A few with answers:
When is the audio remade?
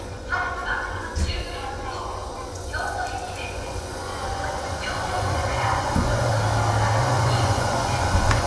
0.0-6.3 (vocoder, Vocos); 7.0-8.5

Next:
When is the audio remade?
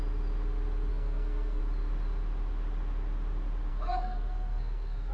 0.9-1.6 (codec, SNAC); 3.7-5.1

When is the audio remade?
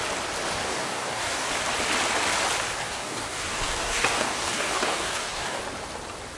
0.6-1.5 (codec, DAC); 2.8-5.6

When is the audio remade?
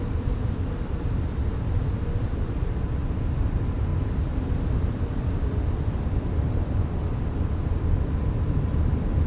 0.0-9.3 (vocoder, BigVGAN v2)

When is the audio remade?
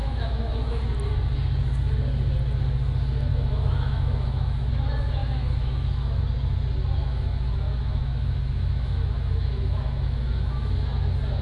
0.0-0.8 (autoencoder, DAC-VAE); 3.3-4.7; 5.2-6.2; 7.0-10.7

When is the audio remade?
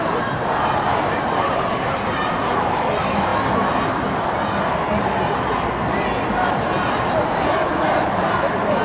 0.0-3.3 (vocoder, BigVGAN v2); 6.5-8.8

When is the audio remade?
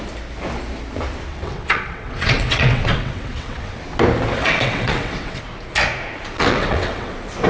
1.3-3.8 (vocoder, WaveNeXt); 4.4-5.4; 6.3-7.1